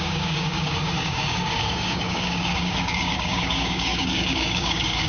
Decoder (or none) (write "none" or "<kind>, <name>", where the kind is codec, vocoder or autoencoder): codec, DAC